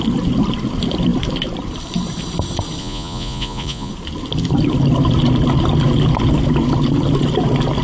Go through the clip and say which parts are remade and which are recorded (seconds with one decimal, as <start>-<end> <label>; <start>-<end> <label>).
0.0-2.8 recorded; 2.8-3.9 remade; 3.9-7.8 recorded